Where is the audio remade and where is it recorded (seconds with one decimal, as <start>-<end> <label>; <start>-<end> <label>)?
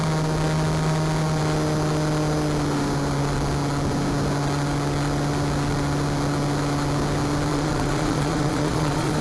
0.0-7.5 recorded; 7.5-9.2 remade